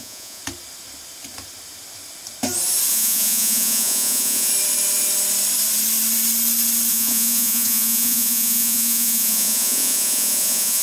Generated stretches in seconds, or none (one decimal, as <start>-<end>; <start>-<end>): 0.0-0.4; 2.9-4.5; 6.9-10.8